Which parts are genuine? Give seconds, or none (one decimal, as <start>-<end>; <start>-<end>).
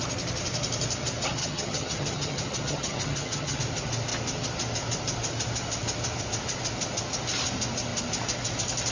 0.0-1.4; 3.6-8.9